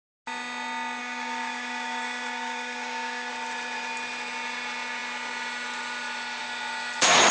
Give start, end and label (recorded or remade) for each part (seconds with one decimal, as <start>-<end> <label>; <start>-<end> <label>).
0.0-1.0 recorded; 1.0-3.3 remade; 3.3-7.3 recorded